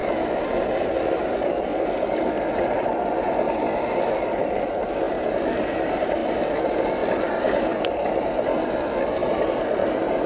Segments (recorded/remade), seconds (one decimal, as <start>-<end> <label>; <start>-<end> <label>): 0.0-10.3 recorded